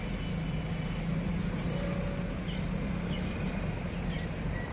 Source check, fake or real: real